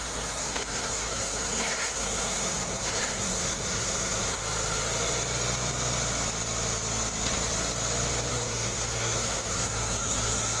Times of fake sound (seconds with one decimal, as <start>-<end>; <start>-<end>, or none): 0.0-4.4; 8.3-10.6